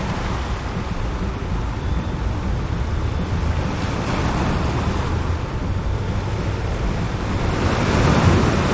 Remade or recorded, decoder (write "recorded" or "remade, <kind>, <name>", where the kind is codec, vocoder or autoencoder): recorded